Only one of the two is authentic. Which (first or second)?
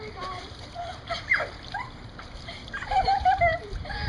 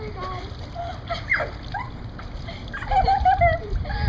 second